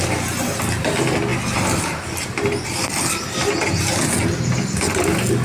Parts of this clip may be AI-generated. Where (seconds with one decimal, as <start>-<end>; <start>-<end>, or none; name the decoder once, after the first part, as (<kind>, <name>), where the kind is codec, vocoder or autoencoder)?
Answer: none